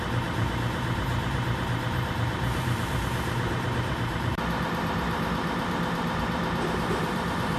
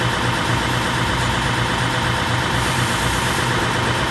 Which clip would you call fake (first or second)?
first